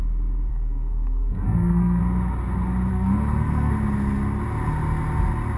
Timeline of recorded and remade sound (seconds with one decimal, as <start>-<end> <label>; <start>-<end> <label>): 0.0-0.5 recorded; 0.5-2.0 remade; 2.0-2.9 recorded; 2.9-3.7 remade; 3.7-5.6 recorded